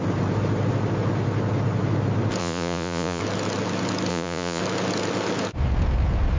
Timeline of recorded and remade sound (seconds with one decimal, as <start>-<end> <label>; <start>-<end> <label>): 0.0-2.4 recorded; 2.4-3.2 remade; 3.2-4.1 recorded; 4.1-4.6 remade; 4.6-6.4 recorded